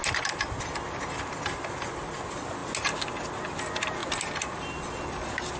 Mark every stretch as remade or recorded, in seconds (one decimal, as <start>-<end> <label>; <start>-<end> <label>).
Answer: 0.0-4.0 recorded; 4.0-4.9 remade; 4.9-5.6 recorded